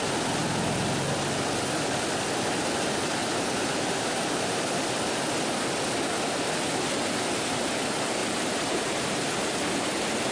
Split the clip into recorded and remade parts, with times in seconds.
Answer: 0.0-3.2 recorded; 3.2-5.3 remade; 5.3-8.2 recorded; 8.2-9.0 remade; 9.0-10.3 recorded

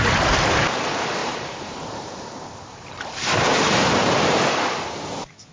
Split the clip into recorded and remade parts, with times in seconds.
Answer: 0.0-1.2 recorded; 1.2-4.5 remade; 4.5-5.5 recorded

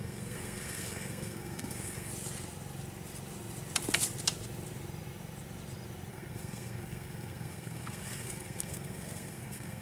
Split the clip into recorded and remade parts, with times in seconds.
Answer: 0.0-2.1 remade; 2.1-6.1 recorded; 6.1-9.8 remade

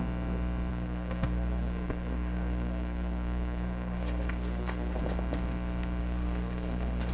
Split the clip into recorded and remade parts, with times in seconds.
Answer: 0.0-0.7 recorded; 0.7-5.0 remade; 5.0-6.0 recorded; 6.0-7.1 remade

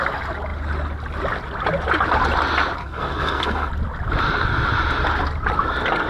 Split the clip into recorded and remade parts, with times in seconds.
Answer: 0.0-2.8 recorded; 2.8-3.7 remade; 3.7-6.1 recorded

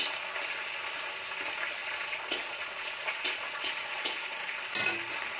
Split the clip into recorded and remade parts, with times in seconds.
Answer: 0.0-1.8 recorded; 1.8-4.7 remade; 4.7-5.4 recorded